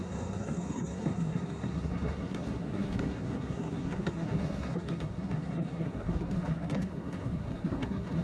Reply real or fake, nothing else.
fake